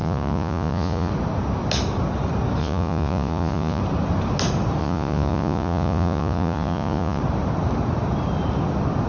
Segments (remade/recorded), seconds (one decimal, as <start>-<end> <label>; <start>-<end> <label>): 0.0-1.1 remade; 1.1-2.6 recorded; 2.6-3.8 remade; 3.8-4.8 recorded; 4.8-7.2 remade; 7.2-9.1 recorded